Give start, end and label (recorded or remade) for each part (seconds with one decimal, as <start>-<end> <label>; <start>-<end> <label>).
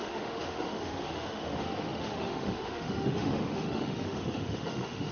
0.0-5.1 remade